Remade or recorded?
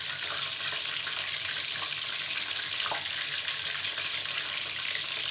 recorded